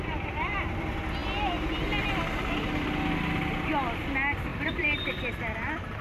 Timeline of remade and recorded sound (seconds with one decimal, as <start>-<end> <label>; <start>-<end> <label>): 0.0-4.5 recorded; 4.5-5.1 remade; 5.1-6.0 recorded

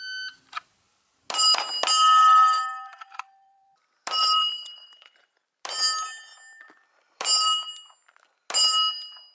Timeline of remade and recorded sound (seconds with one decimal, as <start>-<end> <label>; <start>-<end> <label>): 0.0-2.2 recorded; 2.2-3.8 remade; 3.8-4.2 recorded; 4.2-5.4 remade; 5.4-9.3 recorded

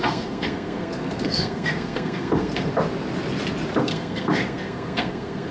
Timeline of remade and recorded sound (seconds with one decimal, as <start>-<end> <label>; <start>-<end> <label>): 0.0-2.7 remade; 2.7-3.8 recorded; 3.8-5.5 remade

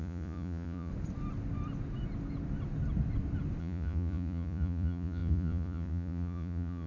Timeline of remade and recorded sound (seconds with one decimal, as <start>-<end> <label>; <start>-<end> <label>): 0.0-0.9 remade; 0.9-3.6 recorded; 3.6-6.9 remade

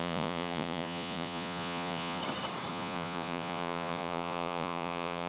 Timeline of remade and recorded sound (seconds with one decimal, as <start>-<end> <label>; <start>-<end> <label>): 0.0-2.2 remade; 2.2-2.7 recorded; 2.7-5.3 remade